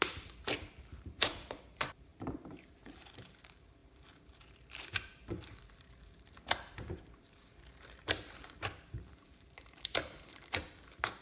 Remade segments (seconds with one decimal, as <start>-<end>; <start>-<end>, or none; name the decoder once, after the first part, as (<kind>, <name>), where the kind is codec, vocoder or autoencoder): 0.0-11.2 (vocoder, BigVGAN v2)